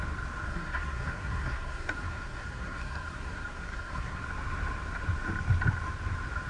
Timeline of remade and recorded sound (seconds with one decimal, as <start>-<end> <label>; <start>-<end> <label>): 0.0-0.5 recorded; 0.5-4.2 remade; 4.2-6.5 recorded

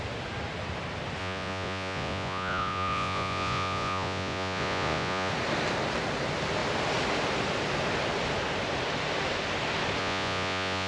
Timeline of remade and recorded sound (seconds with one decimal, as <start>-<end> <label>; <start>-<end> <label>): 0.0-1.2 recorded; 1.2-5.3 remade; 5.3-10.0 recorded; 10.0-10.9 remade

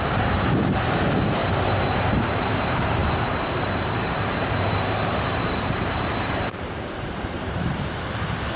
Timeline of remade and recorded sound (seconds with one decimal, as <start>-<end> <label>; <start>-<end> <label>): 0.0-1.4 remade; 1.4-2.0 recorded; 2.0-8.6 remade